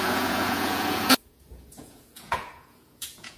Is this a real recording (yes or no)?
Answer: no